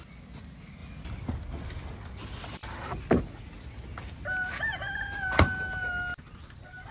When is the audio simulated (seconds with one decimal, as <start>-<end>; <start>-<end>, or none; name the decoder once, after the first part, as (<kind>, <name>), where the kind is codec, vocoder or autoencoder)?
none